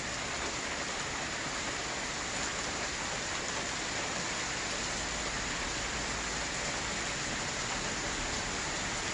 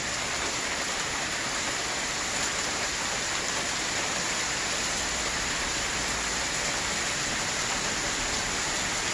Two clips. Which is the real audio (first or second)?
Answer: first